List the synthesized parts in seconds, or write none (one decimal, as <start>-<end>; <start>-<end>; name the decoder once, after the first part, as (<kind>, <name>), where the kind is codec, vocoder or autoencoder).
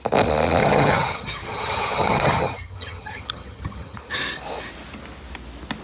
0.6-4.0 (vocoder, HiFi-GAN)